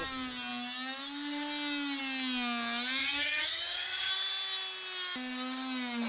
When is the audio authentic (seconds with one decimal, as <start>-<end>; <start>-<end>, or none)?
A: 0.0-3.0; 4.1-6.1